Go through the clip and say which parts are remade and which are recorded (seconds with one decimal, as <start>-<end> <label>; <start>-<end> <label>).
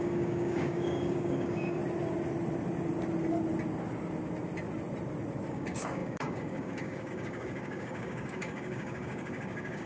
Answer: 0.0-1.8 remade; 1.8-5.5 recorded; 5.5-9.9 remade